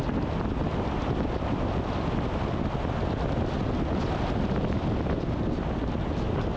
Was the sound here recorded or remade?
recorded